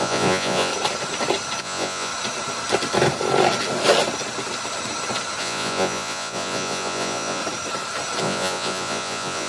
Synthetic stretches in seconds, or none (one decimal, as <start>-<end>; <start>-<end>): 0.0-0.7; 1.6-2.1; 5.4-7.4; 8.2-9.5

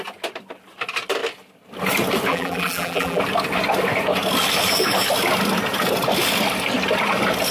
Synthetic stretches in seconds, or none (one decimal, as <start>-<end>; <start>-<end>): 2.3-3.2

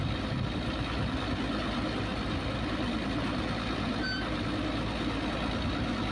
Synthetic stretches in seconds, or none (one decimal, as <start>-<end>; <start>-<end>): none

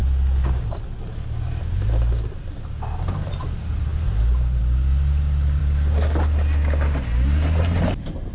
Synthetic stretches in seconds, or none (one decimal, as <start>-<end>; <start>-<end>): none